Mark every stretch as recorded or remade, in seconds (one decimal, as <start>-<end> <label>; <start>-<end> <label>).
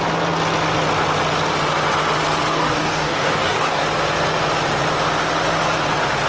0.0-2.5 recorded; 2.5-3.8 remade; 3.8-6.3 recorded